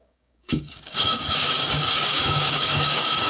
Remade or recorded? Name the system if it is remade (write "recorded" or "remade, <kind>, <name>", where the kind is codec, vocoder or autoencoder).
remade, codec, DAC